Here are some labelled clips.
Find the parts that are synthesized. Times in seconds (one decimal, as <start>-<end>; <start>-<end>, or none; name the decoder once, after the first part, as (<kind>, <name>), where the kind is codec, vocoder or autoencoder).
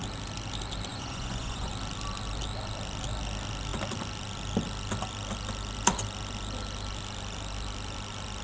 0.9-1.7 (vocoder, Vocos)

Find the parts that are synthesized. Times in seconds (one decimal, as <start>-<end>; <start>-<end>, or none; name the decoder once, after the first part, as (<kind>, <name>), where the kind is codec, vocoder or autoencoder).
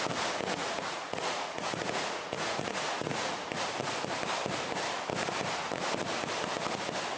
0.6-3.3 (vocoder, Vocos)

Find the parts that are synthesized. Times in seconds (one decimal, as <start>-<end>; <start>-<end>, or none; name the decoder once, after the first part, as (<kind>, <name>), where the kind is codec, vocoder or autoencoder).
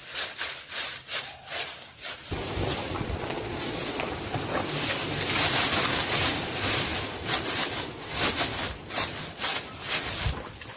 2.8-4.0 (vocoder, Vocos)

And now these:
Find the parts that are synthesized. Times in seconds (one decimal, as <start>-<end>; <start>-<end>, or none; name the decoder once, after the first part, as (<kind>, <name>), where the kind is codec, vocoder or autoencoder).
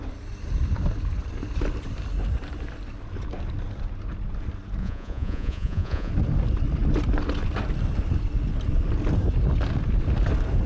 4.8-6.1 (vocoder, Vocos)